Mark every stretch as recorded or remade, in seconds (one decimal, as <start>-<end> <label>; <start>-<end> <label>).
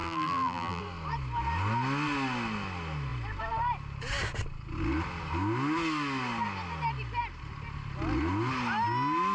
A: 0.0-0.8 remade; 0.8-9.3 recorded